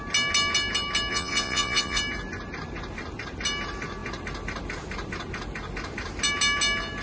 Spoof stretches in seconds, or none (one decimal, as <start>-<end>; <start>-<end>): 1.1-2.0